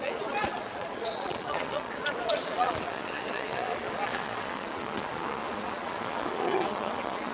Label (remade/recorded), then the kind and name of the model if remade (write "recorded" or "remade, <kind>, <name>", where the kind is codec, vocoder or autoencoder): remade, vocoder, Vocos